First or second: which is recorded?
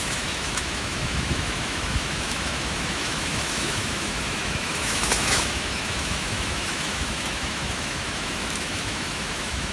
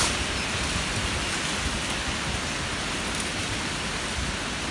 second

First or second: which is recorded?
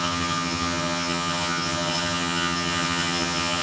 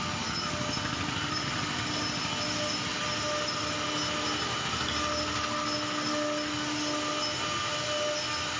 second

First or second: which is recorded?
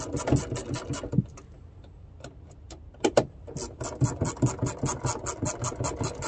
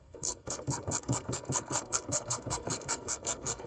first